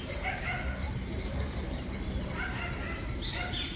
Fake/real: fake